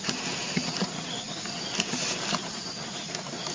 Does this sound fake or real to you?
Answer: real